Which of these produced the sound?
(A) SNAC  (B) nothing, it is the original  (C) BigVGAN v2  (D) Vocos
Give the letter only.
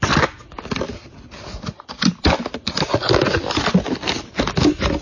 B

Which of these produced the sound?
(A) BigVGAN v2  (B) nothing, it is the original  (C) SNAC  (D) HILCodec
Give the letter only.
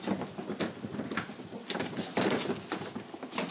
B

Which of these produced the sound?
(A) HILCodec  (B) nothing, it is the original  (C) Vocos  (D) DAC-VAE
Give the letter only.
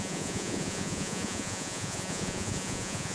C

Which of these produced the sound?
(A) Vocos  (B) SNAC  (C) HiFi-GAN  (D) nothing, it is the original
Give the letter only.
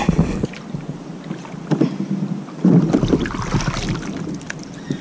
D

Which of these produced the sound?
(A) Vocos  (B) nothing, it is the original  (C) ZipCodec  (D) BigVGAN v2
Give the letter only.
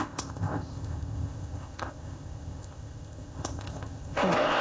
C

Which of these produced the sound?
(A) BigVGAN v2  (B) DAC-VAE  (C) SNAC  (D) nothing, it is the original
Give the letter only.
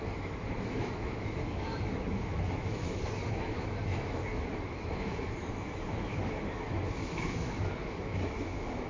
B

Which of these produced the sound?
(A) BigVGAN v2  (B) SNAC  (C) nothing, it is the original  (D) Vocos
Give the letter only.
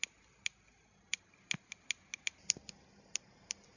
C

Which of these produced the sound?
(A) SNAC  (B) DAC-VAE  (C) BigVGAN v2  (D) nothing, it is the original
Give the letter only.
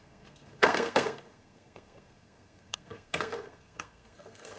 A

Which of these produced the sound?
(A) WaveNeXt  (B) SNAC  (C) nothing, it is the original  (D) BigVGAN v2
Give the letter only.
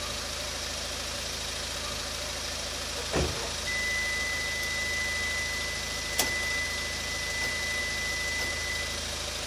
C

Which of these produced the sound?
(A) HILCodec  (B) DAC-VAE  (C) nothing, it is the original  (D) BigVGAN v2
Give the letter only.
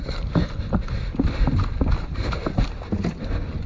C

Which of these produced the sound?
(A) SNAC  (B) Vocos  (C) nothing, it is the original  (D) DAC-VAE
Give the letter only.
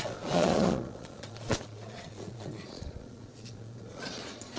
B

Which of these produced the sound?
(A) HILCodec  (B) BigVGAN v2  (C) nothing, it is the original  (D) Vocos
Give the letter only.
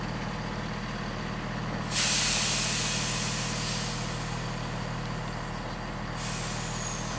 C